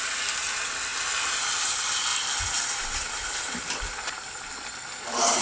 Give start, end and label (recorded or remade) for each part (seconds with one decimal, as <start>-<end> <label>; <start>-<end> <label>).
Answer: 0.0-5.4 recorded